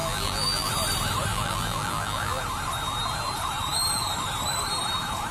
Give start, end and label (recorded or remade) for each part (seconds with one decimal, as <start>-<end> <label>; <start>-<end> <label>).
0.0-0.7 remade; 0.7-1.3 recorded; 1.3-2.4 remade; 2.4-5.3 recorded